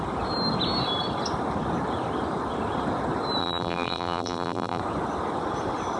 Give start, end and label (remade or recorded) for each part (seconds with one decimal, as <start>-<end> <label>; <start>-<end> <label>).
0.0-3.4 recorded; 3.4-4.8 remade; 4.8-6.0 recorded